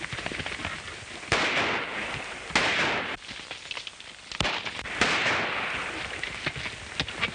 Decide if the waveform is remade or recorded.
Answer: recorded